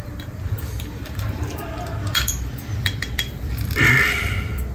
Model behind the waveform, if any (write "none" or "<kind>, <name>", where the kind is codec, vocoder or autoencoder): vocoder, BigVGAN v2